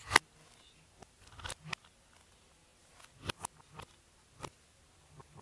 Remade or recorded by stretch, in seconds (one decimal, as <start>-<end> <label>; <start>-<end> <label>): 0.0-5.4 recorded